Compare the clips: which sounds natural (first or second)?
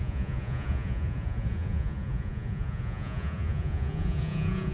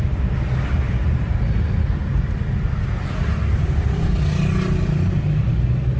second